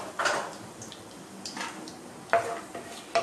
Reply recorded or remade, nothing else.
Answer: recorded